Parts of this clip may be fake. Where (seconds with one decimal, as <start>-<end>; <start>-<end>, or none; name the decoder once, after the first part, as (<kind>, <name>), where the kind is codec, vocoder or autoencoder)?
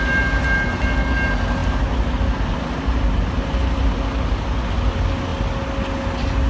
none